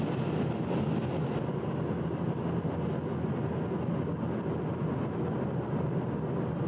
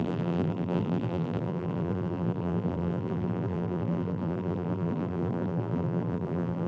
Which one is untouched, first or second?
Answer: first